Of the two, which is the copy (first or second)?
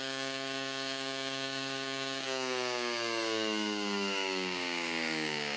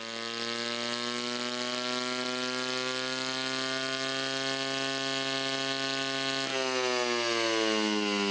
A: first